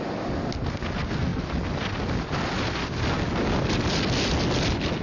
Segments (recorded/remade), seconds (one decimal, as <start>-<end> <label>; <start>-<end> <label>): 0.0-5.0 recorded